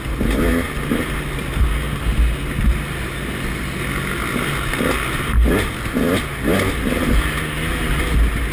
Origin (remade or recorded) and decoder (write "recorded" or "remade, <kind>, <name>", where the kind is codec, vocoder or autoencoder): recorded